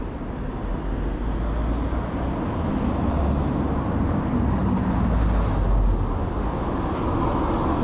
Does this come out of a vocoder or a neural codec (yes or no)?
no